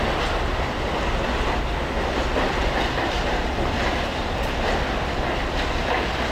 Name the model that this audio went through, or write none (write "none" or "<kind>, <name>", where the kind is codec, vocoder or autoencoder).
vocoder, BigVGAN v2